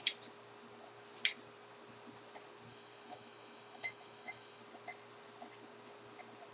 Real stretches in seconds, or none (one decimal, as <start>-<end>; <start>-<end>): 0.0-2.7; 4.6-6.5